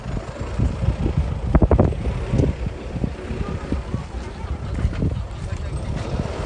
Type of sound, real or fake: real